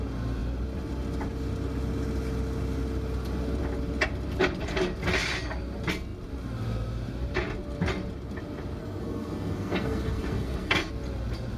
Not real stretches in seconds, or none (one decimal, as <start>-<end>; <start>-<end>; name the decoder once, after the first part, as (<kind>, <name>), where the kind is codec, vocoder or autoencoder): 8.8-10.9 (codec, SNAC)

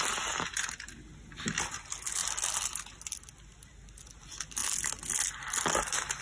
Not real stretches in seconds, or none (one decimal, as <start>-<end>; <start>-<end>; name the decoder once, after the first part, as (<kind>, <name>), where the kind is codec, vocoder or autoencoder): none